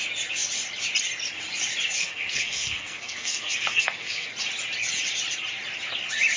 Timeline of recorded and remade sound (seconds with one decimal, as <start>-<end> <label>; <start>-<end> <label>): 0.0-2.0 recorded; 2.0-4.3 remade; 4.3-6.4 recorded